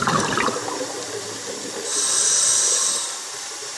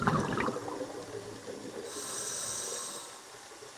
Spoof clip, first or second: first